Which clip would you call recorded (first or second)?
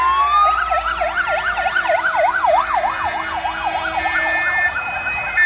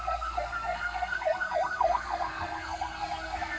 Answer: first